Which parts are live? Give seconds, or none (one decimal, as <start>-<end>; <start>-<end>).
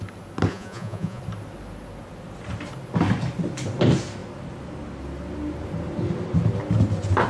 0.0-0.5; 1.2-7.3